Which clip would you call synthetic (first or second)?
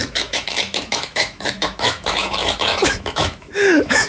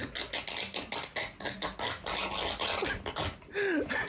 first